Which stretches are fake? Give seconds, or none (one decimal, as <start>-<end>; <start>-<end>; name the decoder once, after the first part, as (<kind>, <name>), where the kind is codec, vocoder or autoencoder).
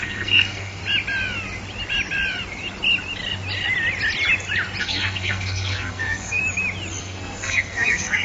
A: 0.0-0.8 (codec, SNAC); 4.8-6.4; 7.0-8.2